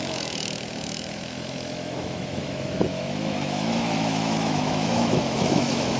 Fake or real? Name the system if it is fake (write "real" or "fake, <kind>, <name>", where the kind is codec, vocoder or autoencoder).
fake, autoencoder, DAC-VAE